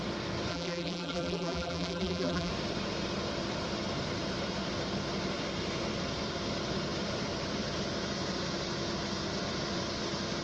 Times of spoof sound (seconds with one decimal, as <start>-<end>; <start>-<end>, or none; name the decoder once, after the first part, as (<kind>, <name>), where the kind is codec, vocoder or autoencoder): 0.5-2.5 (vocoder, BigVGAN v2)

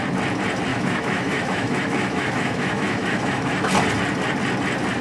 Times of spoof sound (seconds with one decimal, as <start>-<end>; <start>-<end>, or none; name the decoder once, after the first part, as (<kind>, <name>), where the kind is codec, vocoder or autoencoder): 0.7-3.7 (autoencoder, DAC-VAE)

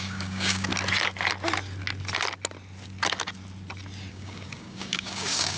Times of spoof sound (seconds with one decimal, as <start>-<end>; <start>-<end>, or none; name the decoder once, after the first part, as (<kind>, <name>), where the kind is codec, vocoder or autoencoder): 0.0-0.7 (codec, DAC); 4.1-5.6

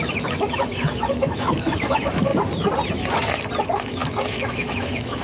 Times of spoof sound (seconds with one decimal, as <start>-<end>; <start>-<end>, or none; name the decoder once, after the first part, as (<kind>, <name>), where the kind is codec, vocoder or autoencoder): 0.0-2.3 (autoencoder, DAC-VAE); 3.6-5.2

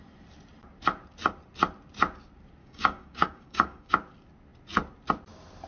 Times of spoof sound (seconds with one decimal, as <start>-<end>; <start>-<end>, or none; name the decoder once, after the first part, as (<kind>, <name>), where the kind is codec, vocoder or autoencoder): 2.6-3.9 (codec, DAC)

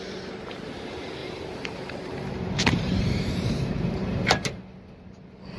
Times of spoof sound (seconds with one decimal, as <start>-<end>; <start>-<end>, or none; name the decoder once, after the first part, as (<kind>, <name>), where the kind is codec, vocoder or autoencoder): 1.2-4.6 (vocoder, BigVGAN v2)

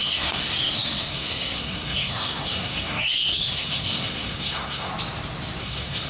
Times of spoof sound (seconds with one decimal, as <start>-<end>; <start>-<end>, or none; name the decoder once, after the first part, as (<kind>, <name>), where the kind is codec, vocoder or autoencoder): 0.0-4.9 (codec, SNAC); 5.6-6.1